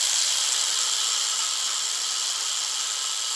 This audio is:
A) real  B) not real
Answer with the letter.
A